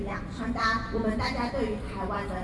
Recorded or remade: recorded